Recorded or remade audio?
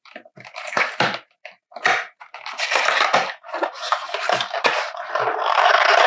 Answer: remade